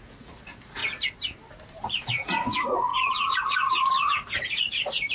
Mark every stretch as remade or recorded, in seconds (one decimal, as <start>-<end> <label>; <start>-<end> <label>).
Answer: 0.0-0.8 remade; 0.8-1.7 recorded; 1.7-2.9 remade; 2.9-3.4 recorded; 3.4-5.1 remade